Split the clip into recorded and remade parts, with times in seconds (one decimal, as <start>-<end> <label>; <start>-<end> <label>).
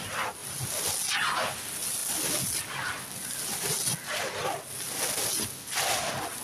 0.0-6.4 recorded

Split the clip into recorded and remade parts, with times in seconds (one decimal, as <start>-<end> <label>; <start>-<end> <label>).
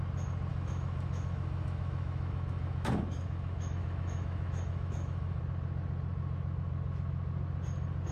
0.0-0.5 recorded; 0.5-5.4 remade; 5.4-8.1 recorded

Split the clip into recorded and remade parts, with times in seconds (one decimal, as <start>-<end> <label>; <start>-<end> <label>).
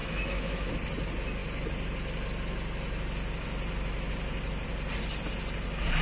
0.0-0.7 remade; 0.7-6.0 recorded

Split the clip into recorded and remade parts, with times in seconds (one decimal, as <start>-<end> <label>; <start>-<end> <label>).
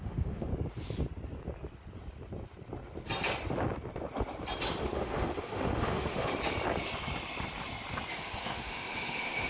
0.0-0.5 remade; 0.5-4.8 recorded; 4.8-6.3 remade; 6.3-8.1 recorded; 8.1-9.5 remade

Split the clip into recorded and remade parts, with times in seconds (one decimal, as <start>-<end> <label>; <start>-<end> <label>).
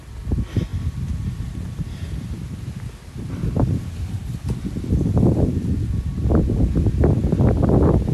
0.0-8.1 recorded